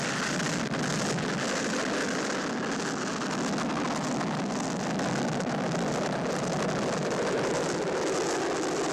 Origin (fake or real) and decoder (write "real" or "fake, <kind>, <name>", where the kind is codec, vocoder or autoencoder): real